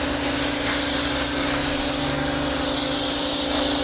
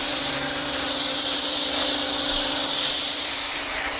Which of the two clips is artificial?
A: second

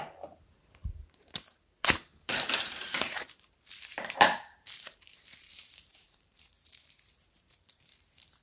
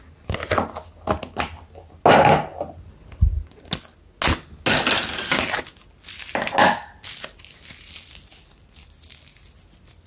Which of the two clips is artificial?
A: first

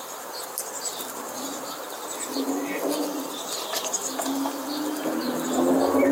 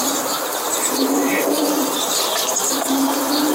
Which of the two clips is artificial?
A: second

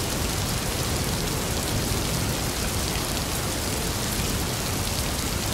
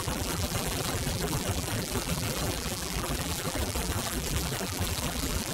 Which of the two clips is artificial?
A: second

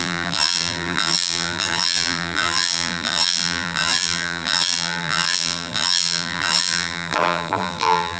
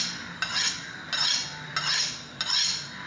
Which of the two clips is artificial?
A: first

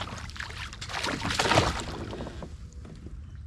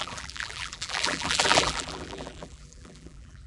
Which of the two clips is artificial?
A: second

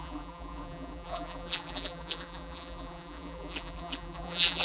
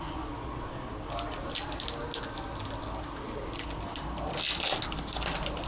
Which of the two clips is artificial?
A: first